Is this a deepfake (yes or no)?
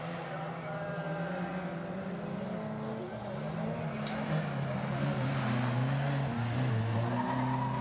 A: no